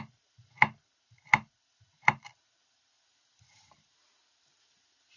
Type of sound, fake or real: real